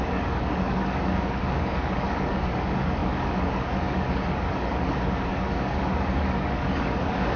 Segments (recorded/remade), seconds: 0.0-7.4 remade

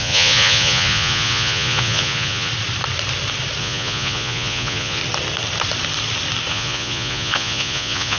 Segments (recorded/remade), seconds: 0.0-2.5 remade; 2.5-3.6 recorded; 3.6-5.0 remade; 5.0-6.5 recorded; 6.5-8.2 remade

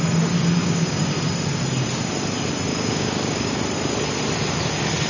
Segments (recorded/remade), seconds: 0.0-0.6 recorded; 0.6-1.1 remade; 1.1-2.7 recorded; 2.7-3.6 remade; 3.6-5.1 recorded

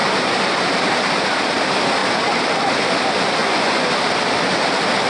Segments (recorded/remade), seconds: 0.0-3.4 recorded; 3.4-3.9 remade; 3.9-5.1 recorded